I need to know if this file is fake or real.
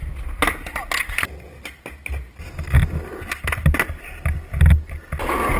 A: real